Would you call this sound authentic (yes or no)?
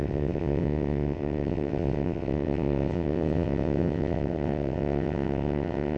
no